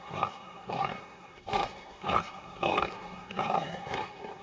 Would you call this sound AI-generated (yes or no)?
yes